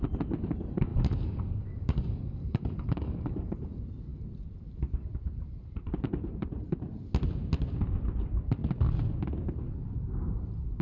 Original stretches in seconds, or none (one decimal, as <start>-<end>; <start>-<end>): 0.0-0.9; 3.5-10.8